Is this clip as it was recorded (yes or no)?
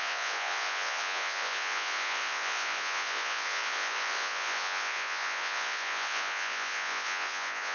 no